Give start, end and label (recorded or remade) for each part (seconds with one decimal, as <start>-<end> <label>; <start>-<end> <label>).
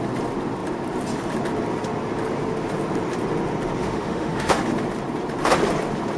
0.0-3.8 recorded; 3.8-4.6 remade; 4.6-6.2 recorded